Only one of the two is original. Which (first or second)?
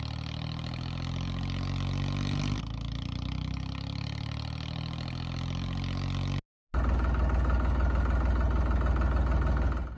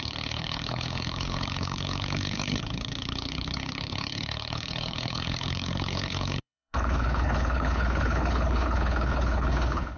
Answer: first